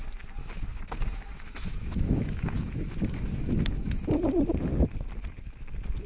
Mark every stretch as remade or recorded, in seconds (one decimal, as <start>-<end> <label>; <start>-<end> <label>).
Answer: 0.0-0.4 recorded; 0.4-4.1 remade; 4.1-6.1 recorded